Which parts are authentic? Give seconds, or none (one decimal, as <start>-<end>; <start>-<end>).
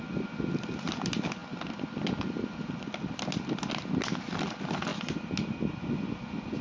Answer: 0.0-6.6